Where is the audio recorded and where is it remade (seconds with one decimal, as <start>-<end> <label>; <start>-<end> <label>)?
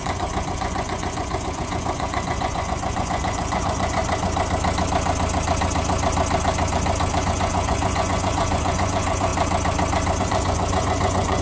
0.0-4.0 remade; 4.0-7.2 recorded; 7.2-9.3 remade; 9.3-10.2 recorded; 10.2-11.4 remade